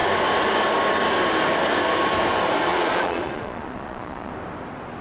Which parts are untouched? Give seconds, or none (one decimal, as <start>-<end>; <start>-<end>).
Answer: 0.0-2.7; 4.3-5.0